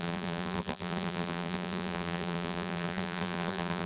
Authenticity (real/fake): fake